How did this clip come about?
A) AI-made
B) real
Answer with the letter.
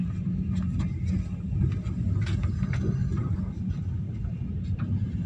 B